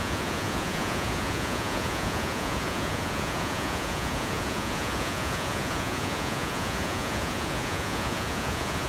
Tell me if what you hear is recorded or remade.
remade